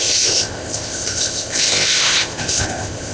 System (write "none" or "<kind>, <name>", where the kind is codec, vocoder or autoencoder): codec, ZipCodec